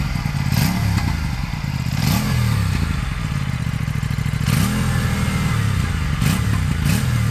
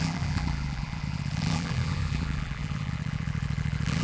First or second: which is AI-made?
second